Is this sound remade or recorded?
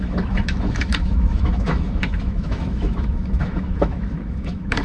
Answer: remade